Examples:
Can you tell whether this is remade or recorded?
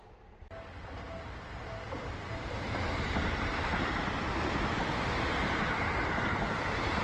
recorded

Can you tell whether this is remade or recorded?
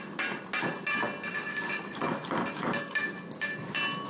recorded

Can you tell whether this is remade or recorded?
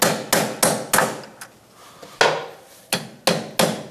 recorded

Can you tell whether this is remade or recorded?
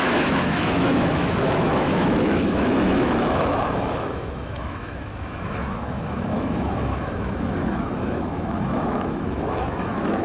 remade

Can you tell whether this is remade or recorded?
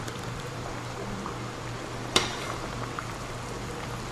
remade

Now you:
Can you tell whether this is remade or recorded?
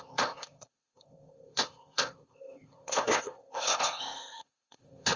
remade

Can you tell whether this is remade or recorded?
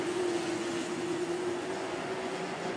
remade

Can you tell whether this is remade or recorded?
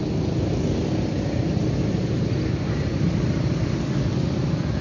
recorded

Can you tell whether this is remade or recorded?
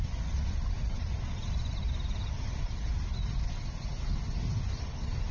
recorded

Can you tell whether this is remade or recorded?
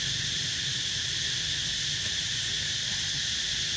recorded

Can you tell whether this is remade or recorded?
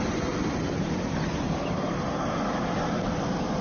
remade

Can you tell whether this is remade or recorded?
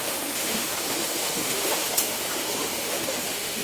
remade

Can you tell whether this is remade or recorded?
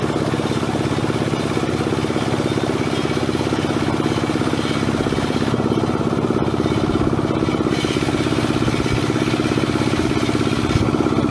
recorded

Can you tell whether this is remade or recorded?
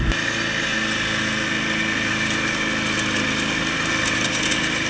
recorded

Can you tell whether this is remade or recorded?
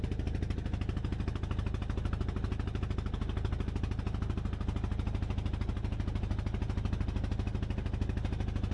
recorded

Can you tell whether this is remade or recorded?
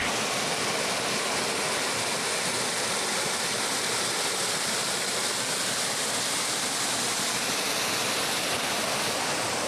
recorded